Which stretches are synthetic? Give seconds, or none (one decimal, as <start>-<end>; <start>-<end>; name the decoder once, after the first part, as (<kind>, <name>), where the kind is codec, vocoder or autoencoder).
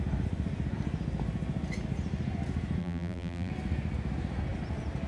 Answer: 2.8-3.5 (vocoder, BigVGAN v2)